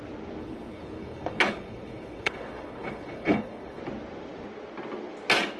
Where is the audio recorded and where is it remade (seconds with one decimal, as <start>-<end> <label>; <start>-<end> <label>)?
0.0-0.4 recorded; 0.4-3.8 remade; 3.8-5.6 recorded